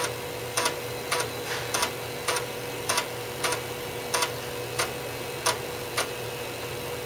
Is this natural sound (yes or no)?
yes